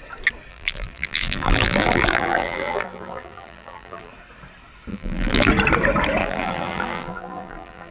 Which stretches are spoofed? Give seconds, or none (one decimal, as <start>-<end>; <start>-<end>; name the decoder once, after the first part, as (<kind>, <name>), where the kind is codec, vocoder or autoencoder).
0.5-4.1 (vocoder, BigVGAN v2); 4.9-5.5; 6.2-7.9